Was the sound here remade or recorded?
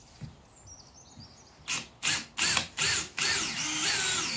recorded